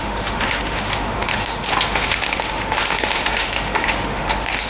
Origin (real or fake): fake